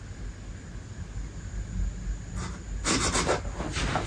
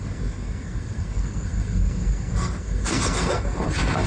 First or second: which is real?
first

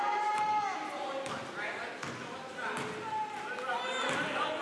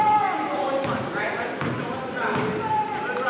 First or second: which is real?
first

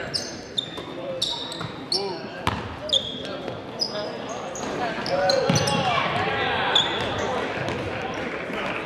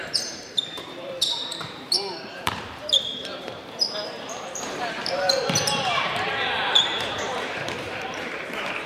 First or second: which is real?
first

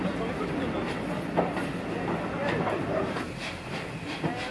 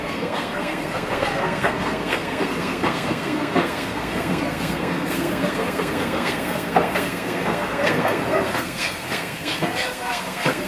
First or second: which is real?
first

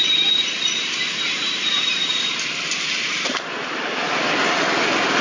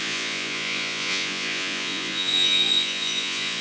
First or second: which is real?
first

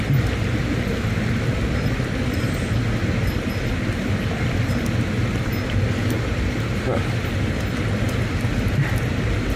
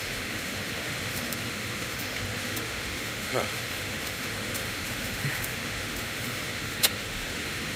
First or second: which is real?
first